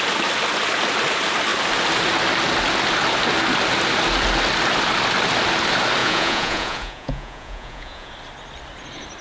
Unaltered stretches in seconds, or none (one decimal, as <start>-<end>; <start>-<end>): 0.0-6.0; 8.1-9.2